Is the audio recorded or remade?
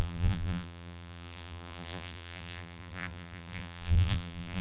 remade